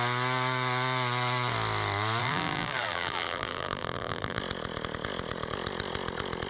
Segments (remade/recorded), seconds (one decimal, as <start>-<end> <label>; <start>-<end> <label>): 0.0-2.2 recorded; 2.2-4.4 remade; 4.4-6.5 recorded